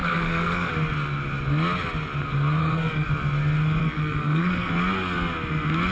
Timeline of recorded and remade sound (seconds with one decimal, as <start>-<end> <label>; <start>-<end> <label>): 0.0-0.7 remade; 0.7-2.6 recorded; 2.6-3.1 remade; 3.1-3.8 recorded; 3.8-4.7 remade; 4.7-5.9 recorded